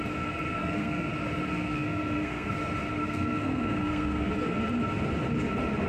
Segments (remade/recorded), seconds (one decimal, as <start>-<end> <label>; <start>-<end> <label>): 0.0-0.6 recorded; 0.6-1.1 remade; 1.1-1.5 recorded; 1.5-2.5 remade; 2.5-3.0 recorded; 3.0-4.3 remade; 4.3-5.9 recorded